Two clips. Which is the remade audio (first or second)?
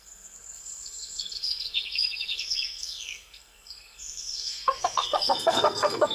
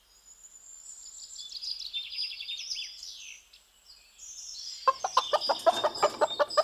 first